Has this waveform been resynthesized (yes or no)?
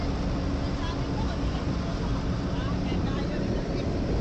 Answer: no